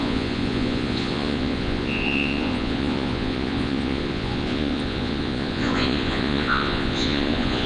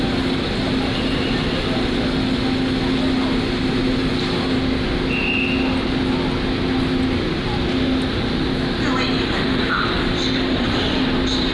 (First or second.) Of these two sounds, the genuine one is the second